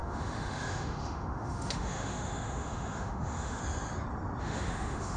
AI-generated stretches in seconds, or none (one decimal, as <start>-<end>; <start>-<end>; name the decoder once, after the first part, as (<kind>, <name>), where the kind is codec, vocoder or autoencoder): 0.0-3.6 (autoencoder, DAC-VAE); 4.4-5.2